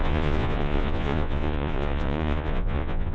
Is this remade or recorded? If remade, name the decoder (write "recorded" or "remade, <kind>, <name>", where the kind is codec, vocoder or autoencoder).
remade, vocoder, Vocos